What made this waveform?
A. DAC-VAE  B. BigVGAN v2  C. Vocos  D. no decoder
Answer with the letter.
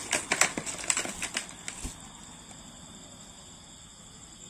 D